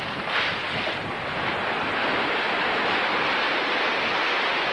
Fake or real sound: real